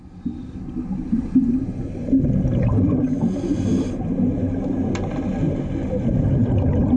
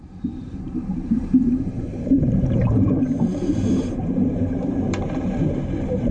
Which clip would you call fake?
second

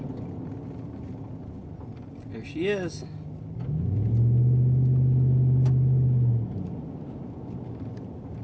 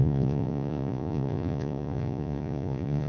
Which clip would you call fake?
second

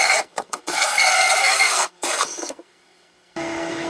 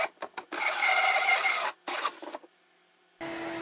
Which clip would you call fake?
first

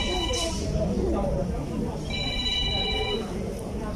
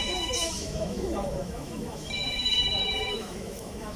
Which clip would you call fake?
second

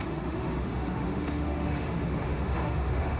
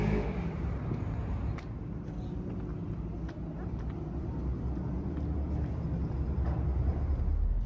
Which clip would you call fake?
first